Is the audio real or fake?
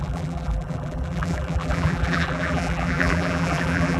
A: fake